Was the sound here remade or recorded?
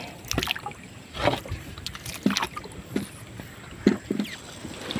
recorded